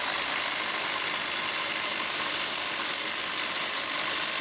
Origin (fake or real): real